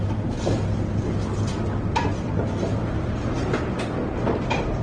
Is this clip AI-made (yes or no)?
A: no